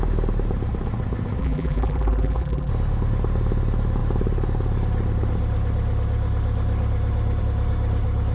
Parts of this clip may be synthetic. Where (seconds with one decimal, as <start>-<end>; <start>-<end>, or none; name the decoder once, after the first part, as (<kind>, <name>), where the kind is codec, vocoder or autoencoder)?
1.4-2.7 (vocoder, BigVGAN v2)